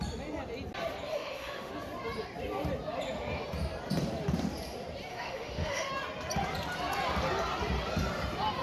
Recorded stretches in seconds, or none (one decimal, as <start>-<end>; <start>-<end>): 0.0-1.1; 1.7-5.1; 5.9-8.6